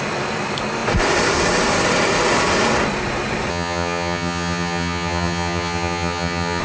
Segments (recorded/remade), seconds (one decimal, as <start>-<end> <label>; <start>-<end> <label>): 0.0-3.5 recorded; 3.5-6.6 remade